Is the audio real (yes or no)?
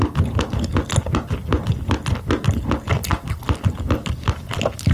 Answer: yes